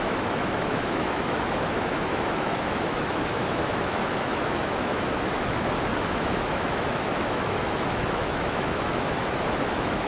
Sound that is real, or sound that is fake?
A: fake